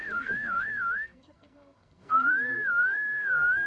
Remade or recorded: remade